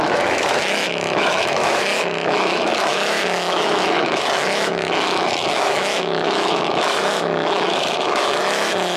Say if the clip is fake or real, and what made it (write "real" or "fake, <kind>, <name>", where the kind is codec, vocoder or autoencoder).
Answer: fake, autoencoder, DAC-VAE